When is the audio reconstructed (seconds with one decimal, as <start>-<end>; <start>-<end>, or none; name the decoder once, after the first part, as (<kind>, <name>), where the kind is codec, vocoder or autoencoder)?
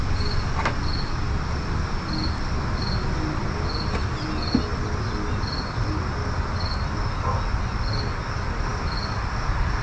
none